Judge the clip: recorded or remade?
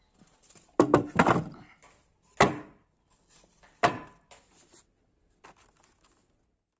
recorded